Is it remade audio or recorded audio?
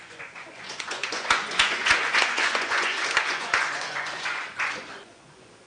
remade